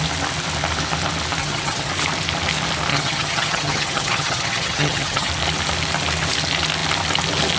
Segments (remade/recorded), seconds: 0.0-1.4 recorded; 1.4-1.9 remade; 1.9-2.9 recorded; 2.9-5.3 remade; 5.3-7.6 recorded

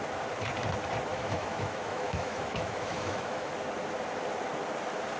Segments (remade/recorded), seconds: 0.0-1.1 recorded; 1.1-3.5 remade; 3.5-5.2 recorded

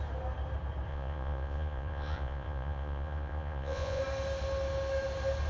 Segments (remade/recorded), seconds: 0.0-0.9 recorded; 0.9-4.0 remade; 4.0-5.5 recorded

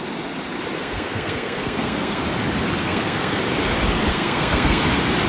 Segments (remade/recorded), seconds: 0.0-0.8 recorded; 0.8-2.2 remade; 2.2-2.8 recorded; 2.8-3.4 remade; 3.4-4.1 recorded; 4.1-4.8 remade; 4.8-5.3 recorded

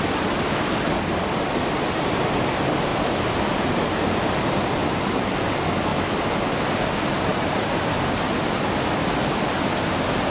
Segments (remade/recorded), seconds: 0.0-10.3 recorded